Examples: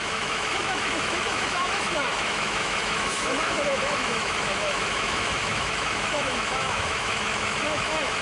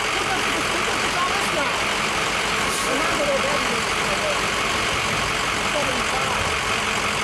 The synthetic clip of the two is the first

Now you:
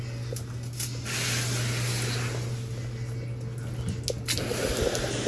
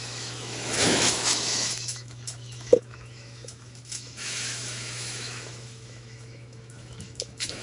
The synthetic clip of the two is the second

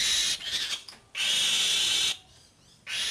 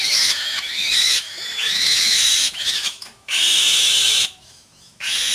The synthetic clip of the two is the second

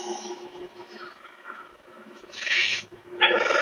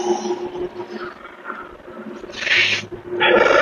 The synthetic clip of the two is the first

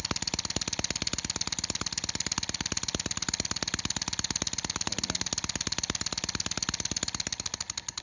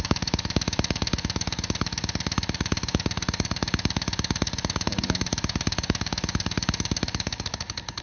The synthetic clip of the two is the second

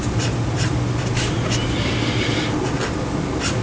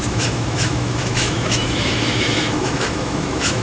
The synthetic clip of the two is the second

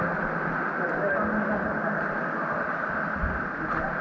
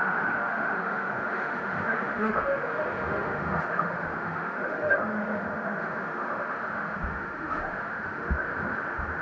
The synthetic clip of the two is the second